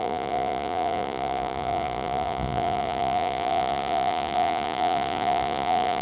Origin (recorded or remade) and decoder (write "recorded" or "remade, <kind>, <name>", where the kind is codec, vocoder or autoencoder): remade, vocoder, Vocos